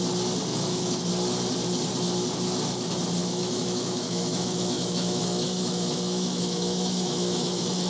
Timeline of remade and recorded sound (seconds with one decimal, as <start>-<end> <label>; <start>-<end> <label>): 0.0-0.5 recorded; 0.5-1.1 remade; 1.1-3.2 recorded; 3.2-7.9 remade